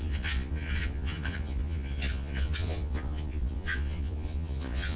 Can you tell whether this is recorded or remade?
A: remade